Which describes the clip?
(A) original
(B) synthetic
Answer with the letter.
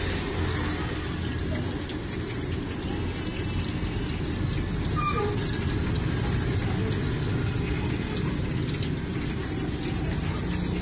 A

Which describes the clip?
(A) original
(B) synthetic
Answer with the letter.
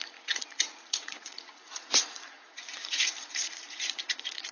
B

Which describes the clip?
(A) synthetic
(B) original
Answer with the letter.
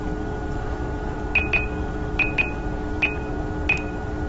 B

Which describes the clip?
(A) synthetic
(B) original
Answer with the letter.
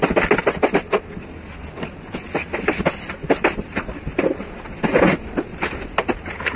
B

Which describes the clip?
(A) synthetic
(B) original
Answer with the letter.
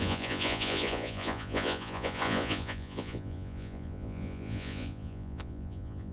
A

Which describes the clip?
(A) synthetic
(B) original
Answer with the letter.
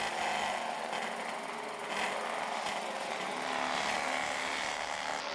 B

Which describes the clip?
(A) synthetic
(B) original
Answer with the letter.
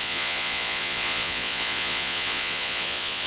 A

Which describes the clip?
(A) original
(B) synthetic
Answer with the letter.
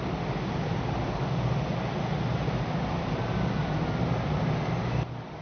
A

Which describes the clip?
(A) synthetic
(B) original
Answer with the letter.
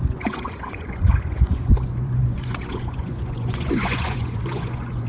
A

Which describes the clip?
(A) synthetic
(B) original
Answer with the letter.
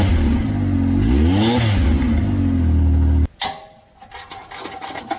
B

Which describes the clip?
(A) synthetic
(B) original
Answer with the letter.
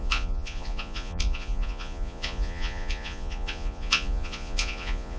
A